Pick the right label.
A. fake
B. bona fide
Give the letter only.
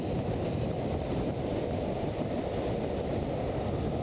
B